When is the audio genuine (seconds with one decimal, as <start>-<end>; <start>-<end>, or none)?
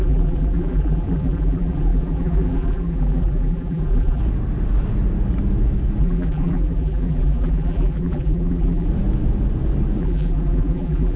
4.2-6.0; 8.9-10.0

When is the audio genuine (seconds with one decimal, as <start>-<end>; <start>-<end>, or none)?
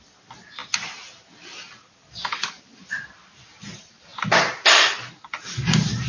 0.6-2.5; 4.1-5.3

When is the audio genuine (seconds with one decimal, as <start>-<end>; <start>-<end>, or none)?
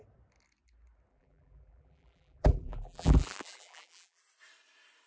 0.0-1.1; 4.2-5.1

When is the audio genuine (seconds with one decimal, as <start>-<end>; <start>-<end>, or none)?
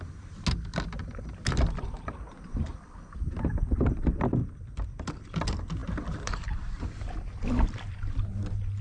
0.0-4.4; 5.2-5.8; 8.2-8.8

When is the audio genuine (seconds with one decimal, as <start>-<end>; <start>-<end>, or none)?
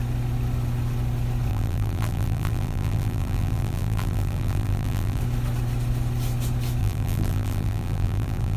0.0-1.5; 5.2-6.8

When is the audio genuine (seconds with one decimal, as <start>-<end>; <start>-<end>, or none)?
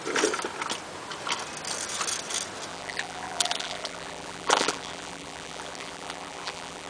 0.0-2.7